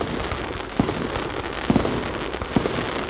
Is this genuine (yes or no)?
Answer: yes